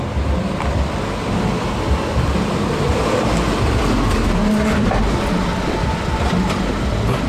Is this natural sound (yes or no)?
yes